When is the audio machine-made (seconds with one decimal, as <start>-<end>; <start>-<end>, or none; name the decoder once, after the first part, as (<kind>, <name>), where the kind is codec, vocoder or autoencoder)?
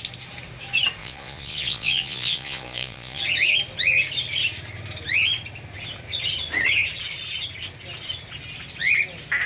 1.0-3.2 (vocoder, Vocos)